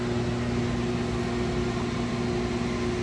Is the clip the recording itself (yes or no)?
yes